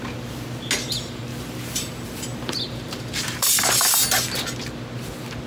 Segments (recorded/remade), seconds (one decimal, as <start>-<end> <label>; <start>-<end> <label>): 0.0-1.3 recorded; 1.3-3.7 remade; 3.7-5.5 recorded